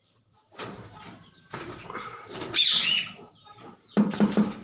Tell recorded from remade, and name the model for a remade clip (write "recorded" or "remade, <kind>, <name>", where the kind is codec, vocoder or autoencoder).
remade, vocoder, BigVGAN v2